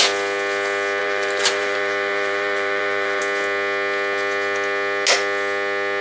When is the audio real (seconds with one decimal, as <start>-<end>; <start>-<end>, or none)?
0.0-1.0; 3.2-6.0